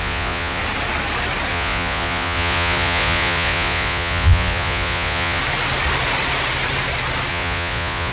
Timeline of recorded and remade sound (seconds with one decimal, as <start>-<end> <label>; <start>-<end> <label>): 0.0-0.6 remade; 0.6-1.5 recorded; 1.5-5.4 remade; 5.4-7.3 recorded; 7.3-8.1 remade